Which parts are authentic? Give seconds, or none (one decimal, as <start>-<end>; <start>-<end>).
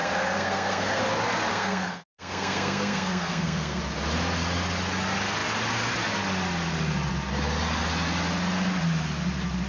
1.0-1.5; 3.8-9.7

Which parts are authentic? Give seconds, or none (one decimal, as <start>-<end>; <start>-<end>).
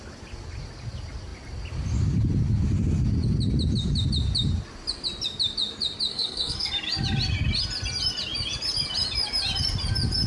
0.0-6.1; 6.7-10.3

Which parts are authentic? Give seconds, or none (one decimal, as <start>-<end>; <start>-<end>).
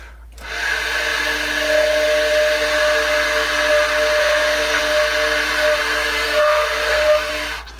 0.0-4.2; 4.8-5.8; 7.3-7.8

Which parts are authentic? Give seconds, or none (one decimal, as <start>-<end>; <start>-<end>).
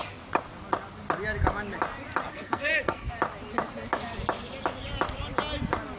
0.0-2.3; 3.1-6.0